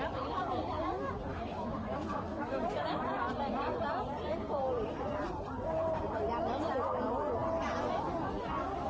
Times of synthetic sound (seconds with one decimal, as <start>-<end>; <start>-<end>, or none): 1.3-3.0